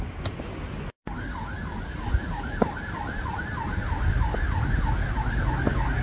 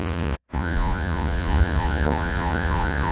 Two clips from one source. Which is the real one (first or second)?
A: first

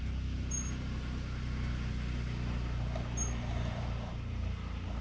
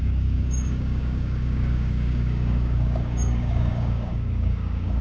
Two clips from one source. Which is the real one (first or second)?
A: first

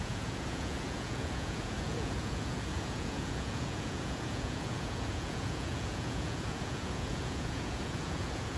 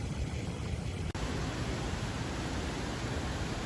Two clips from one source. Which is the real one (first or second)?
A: second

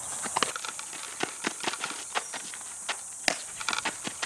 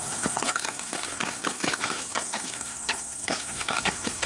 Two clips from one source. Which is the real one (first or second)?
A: first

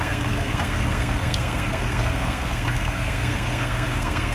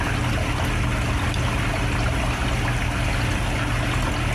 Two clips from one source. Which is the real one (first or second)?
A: second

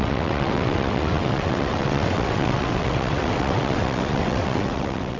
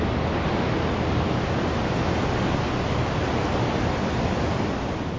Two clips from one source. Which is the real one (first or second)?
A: second